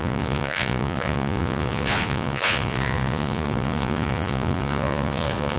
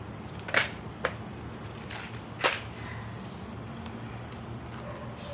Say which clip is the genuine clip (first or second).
second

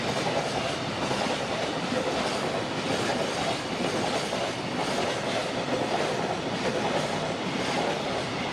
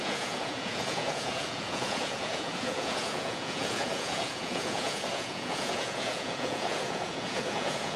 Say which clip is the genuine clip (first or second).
first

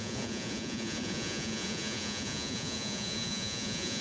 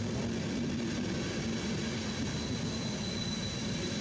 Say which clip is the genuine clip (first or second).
second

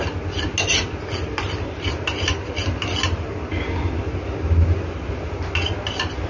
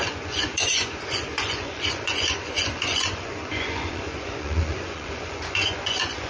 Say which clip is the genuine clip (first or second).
first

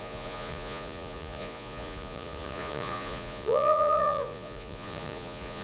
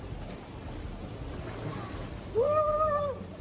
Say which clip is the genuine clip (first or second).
second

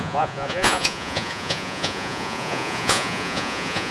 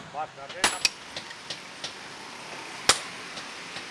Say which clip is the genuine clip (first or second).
second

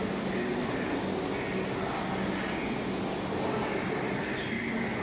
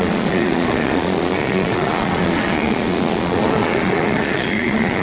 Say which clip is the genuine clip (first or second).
first